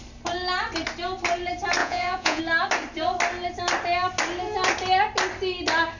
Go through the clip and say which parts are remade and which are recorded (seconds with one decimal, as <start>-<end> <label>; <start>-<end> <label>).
0.0-1.8 recorded; 1.8-2.4 remade; 2.4-6.0 recorded